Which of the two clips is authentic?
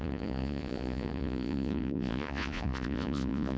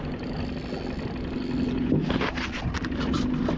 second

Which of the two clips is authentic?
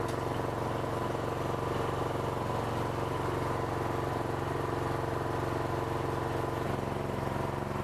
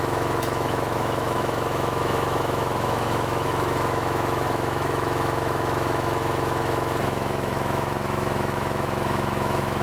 first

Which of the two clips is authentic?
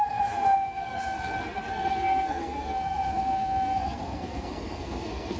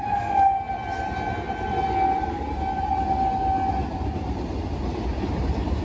second